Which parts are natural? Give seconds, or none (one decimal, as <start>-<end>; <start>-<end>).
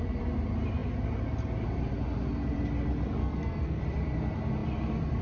0.0-3.2; 3.8-5.2